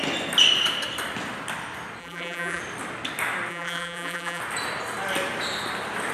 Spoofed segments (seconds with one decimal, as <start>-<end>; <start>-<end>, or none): 2.0-2.6; 3.5-4.4